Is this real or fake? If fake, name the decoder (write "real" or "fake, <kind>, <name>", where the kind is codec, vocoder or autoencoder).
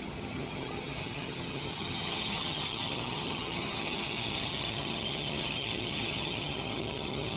fake, vocoder, HiFi-GAN